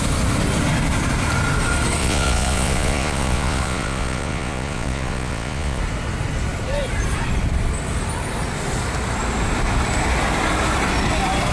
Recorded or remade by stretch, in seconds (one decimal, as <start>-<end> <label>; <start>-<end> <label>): 0.0-2.0 recorded; 2.0-5.8 remade; 5.8-11.5 recorded